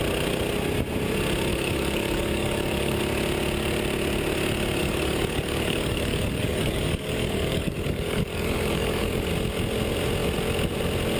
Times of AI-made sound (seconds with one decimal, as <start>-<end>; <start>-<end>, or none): 1.5-3.0; 4.8-9.3